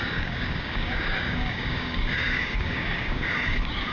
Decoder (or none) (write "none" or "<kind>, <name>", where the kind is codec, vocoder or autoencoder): codec, DAC